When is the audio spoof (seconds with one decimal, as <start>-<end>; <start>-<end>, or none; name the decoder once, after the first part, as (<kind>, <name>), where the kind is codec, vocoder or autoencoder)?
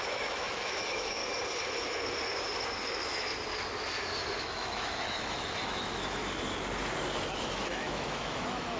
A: 0.0-1.2 (autoencoder, DAC-VAE); 2.9-3.3; 4.4-6.2; 7.3-8.8